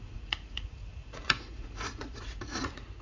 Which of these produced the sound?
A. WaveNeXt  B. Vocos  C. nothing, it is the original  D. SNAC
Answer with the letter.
B